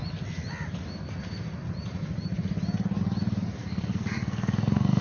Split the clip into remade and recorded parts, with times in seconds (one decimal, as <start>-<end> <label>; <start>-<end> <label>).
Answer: 0.0-3.6 recorded; 3.6-5.0 remade